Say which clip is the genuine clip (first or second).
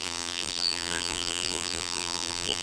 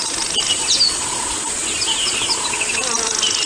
second